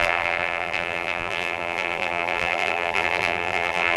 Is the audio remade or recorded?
remade